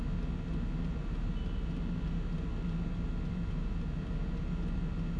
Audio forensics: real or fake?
real